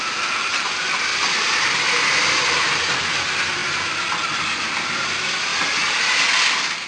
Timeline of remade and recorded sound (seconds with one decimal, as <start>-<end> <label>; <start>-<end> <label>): 0.0-1.1 recorded; 1.1-3.0 remade; 3.0-6.9 recorded